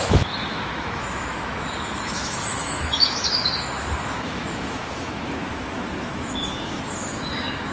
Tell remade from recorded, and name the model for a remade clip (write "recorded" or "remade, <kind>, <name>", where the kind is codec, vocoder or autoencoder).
remade, autoencoder, DAC-VAE